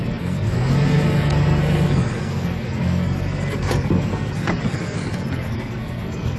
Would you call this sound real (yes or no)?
no